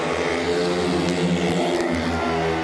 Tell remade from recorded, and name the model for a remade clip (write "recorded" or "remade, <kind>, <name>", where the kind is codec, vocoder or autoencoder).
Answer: recorded